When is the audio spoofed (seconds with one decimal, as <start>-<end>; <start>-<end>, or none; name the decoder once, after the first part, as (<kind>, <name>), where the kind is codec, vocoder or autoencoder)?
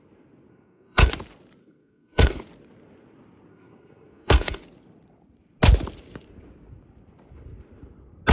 0.5-1.1 (codec, SNAC); 1.6-2.4; 3.5-4.6